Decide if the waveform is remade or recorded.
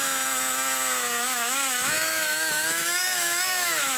remade